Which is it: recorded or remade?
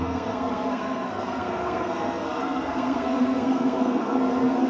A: remade